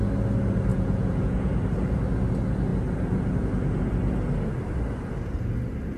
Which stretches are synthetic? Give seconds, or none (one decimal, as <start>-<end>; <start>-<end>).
0.7-1.5